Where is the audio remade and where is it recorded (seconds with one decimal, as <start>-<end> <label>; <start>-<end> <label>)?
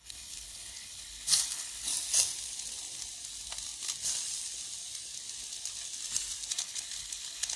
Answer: 0.0-1.9 remade; 1.9-6.5 recorded; 6.5-7.6 remade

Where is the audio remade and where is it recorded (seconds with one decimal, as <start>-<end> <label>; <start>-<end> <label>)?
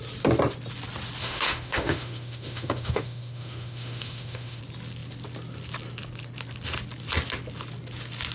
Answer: 0.0-1.2 recorded; 1.2-4.6 remade; 4.6-8.3 recorded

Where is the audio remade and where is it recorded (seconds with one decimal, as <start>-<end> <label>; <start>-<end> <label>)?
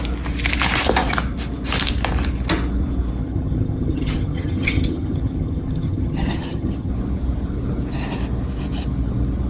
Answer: 0.0-3.2 recorded; 3.2-6.9 remade; 6.9-9.5 recorded